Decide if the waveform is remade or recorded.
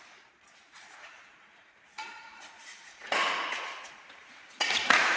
remade